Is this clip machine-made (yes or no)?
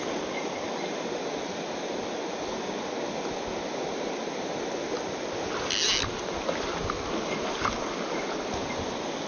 no